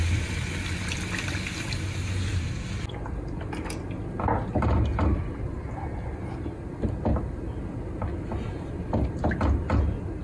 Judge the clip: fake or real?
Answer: real